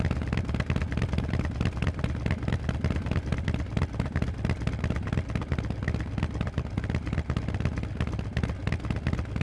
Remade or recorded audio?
recorded